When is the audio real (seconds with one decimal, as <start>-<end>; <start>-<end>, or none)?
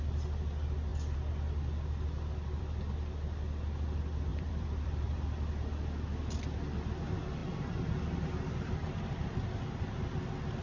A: 0.0-4.3; 5.2-10.6